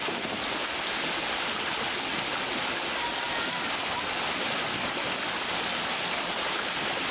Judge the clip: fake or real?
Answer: real